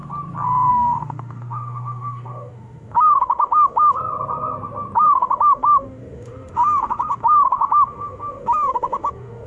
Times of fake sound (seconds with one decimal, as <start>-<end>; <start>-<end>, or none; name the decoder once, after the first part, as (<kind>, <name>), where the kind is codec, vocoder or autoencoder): 0.7-4.0 (autoencoder, DAC-VAE); 5.1-9.5